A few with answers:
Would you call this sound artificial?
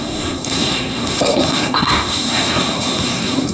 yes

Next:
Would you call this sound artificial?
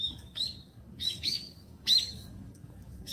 yes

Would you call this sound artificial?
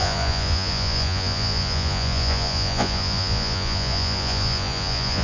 yes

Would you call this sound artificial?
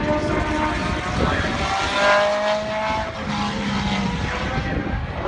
no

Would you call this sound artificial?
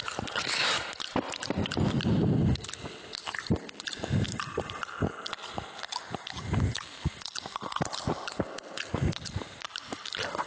no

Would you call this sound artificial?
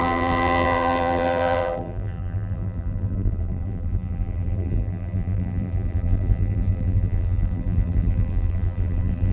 yes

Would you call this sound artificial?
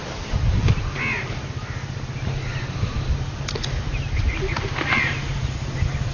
no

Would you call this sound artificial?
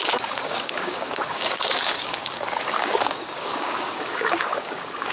yes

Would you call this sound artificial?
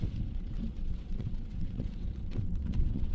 yes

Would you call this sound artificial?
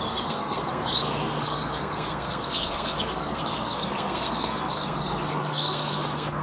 yes